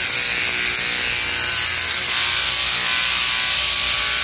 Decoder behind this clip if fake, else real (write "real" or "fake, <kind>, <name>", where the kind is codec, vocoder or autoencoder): real